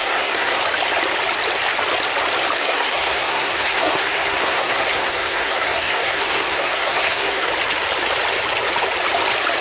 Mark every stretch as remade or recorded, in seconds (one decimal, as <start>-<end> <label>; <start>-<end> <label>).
0.0-0.6 remade; 0.6-2.6 recorded; 2.6-7.5 remade; 7.5-9.6 recorded